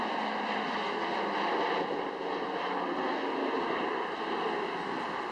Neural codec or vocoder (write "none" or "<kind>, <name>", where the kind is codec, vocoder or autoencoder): none